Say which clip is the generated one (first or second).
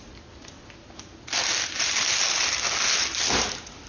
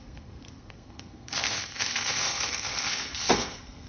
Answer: second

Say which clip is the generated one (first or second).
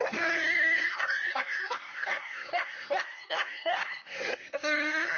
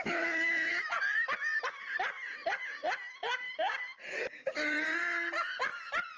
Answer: first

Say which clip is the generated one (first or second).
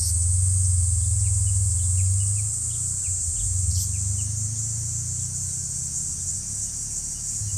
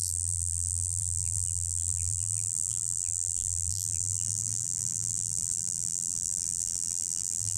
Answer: second